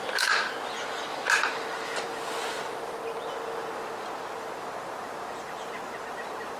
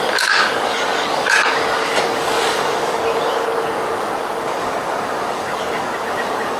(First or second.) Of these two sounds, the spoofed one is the second